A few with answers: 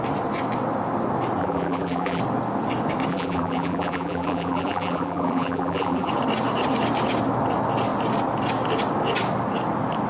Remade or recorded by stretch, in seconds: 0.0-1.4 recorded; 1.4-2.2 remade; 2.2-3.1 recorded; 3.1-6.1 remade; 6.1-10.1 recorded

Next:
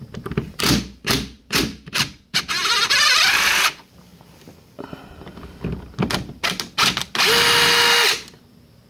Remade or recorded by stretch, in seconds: 0.0-4.1 remade; 4.1-8.9 recorded

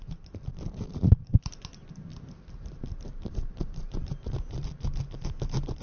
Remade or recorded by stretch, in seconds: 0.0-0.5 recorded; 0.5-1.6 remade; 1.6-2.1 recorded; 2.1-4.3 remade; 4.3-5.8 recorded

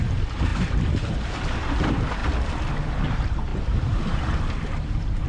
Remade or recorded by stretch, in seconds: 0.0-2.2 remade; 2.2-2.8 recorded; 2.8-5.3 remade

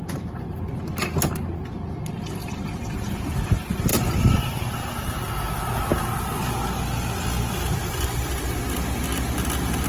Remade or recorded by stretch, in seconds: 0.0-2.4 recorded; 2.4-3.4 remade; 3.4-3.9 recorded; 3.9-5.3 remade; 5.3-7.8 recorded; 7.8-8.6 remade; 8.6-9.9 recorded

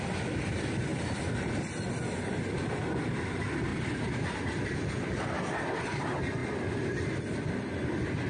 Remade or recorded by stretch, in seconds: 0.0-8.3 remade

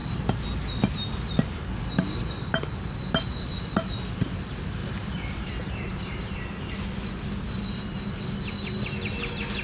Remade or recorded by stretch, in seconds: 0.0-4.8 recorded; 4.8-6.8 remade; 6.8-9.6 recorded